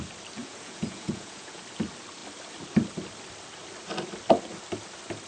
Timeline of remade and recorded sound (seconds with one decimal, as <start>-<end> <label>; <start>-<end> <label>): 0.0-0.4 recorded; 0.4-1.6 remade; 1.6-5.3 recorded